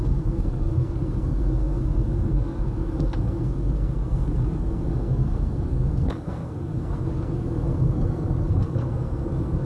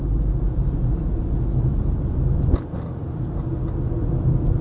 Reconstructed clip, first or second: first